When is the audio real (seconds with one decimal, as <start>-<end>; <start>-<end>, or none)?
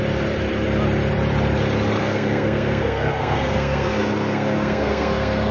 0.0-2.0